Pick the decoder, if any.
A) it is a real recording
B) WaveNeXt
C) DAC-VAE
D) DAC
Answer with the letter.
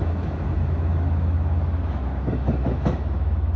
C